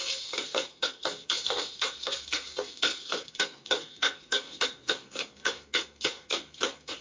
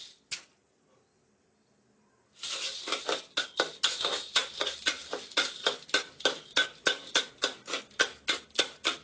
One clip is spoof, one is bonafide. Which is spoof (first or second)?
first